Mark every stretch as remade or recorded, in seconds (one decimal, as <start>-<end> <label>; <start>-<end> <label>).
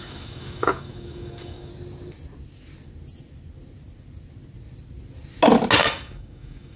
0.0-1.7 remade; 1.7-5.8 recorded; 5.8-6.8 remade